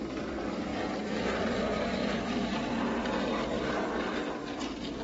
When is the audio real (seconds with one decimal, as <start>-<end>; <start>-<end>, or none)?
0.0-2.0; 2.8-5.0